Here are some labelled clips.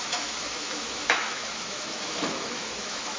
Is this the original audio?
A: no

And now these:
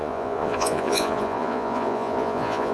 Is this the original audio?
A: no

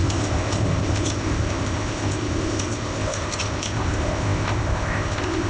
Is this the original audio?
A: no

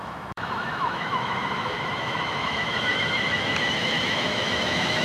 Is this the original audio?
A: no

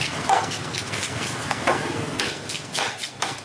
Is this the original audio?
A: no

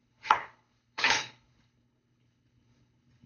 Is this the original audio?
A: no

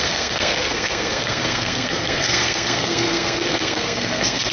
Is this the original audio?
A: no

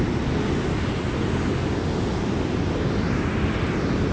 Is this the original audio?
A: yes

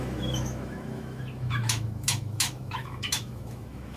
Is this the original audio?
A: no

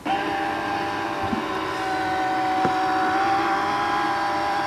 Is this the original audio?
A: yes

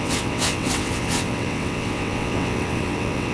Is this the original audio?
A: no